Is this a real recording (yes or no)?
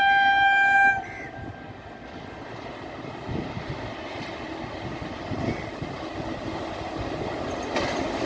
yes